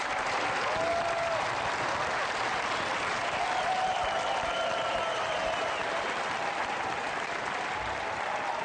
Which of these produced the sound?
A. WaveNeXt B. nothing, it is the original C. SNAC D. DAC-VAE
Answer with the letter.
B